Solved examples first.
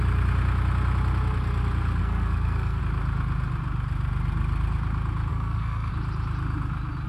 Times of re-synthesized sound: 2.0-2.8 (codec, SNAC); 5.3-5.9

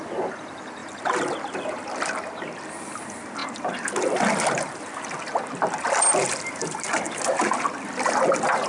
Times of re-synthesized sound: none